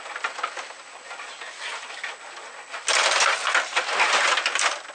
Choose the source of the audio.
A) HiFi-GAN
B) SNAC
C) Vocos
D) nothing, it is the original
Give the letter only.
D